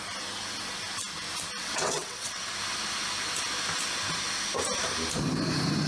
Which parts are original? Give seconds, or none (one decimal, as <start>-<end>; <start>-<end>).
0.0-1.6; 2.5-5.9